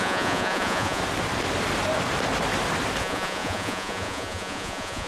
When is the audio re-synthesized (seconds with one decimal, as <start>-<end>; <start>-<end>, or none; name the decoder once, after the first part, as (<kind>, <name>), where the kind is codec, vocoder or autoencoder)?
0.0-1.0 (vocoder, Vocos); 3.0-5.1